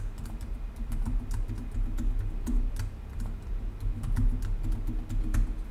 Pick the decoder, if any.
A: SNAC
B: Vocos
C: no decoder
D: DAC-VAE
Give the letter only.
C